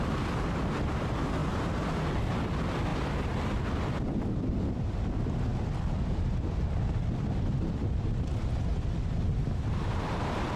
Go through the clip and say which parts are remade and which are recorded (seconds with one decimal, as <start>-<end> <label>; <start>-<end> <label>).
0.0-10.6 recorded